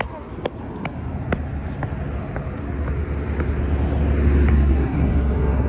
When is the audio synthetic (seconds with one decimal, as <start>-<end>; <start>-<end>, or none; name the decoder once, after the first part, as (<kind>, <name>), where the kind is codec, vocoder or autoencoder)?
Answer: 4.5-5.7 (codec, SNAC)